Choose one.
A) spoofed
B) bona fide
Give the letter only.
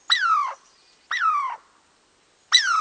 B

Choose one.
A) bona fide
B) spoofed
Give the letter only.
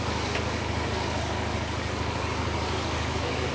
B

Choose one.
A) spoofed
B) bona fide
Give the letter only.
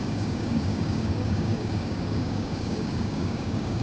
A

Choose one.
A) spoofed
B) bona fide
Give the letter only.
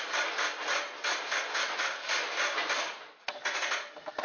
B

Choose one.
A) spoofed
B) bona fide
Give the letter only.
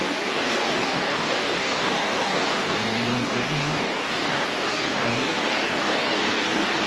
A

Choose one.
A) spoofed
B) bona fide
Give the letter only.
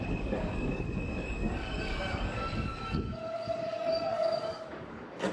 A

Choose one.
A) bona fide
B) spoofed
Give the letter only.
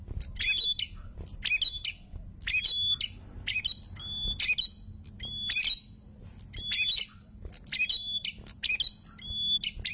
A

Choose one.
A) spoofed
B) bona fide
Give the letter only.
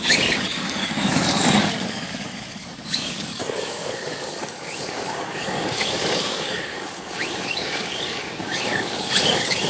A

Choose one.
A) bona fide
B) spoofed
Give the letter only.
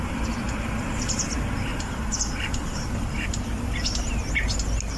A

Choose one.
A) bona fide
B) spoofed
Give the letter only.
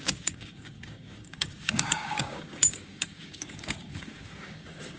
B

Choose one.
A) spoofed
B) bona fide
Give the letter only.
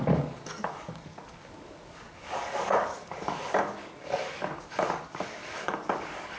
A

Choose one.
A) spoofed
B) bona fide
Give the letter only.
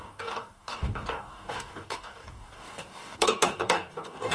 A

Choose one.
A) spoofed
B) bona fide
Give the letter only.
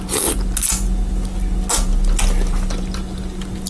B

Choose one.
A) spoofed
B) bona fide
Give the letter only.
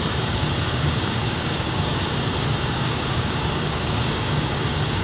A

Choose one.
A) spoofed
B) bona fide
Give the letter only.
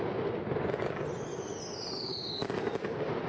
B